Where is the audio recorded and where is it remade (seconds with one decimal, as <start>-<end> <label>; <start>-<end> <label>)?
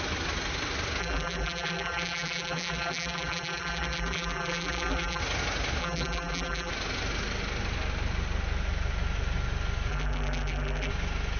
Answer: 0.0-1.0 recorded; 1.0-5.2 remade; 5.2-5.8 recorded; 5.8-6.7 remade; 6.7-9.9 recorded; 9.9-10.9 remade; 10.9-11.4 recorded